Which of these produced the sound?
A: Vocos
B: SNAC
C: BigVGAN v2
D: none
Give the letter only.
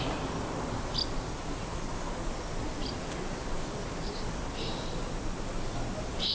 D